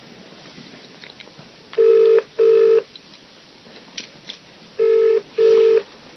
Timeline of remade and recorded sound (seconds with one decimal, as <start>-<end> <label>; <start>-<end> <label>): 0.0-6.2 recorded